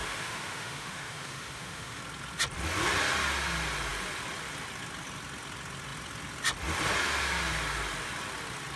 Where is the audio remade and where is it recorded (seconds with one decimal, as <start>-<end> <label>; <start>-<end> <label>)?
0.0-2.0 remade; 2.0-8.8 recorded